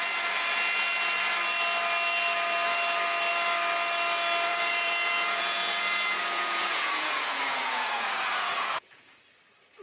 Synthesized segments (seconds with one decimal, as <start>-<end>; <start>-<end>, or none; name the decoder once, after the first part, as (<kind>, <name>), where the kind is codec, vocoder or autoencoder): 4.5-9.2 (vocoder, Vocos)